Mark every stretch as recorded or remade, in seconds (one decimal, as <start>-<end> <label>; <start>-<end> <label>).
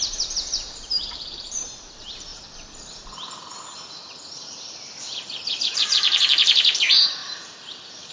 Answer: 0.0-2.3 remade; 2.3-5.6 recorded; 5.6-8.1 remade